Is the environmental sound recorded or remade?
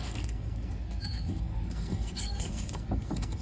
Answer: remade